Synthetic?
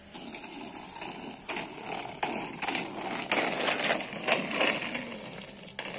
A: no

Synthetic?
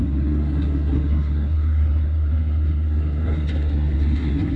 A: yes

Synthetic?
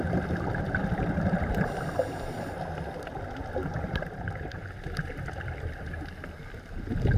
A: no